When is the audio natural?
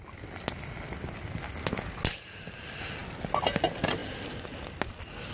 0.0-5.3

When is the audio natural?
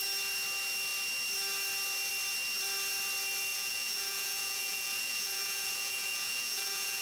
0.0-3.5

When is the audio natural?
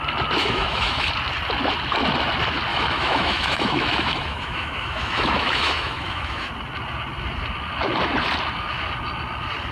0.0-0.4; 1.1-2.7; 6.5-9.7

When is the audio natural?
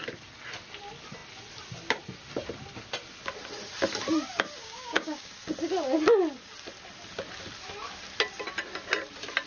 0.0-4.6; 5.3-9.5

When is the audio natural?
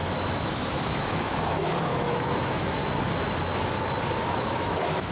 2.8-4.2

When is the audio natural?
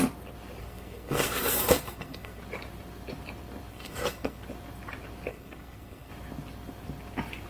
0.0-0.6; 2.4-3.7; 4.4-5.3; 6.1-7.5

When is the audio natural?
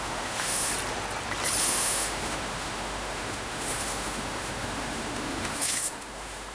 0.7-1.6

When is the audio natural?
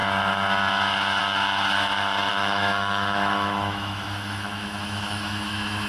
0.0-2.3